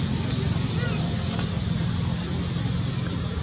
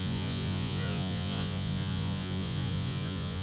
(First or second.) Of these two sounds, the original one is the first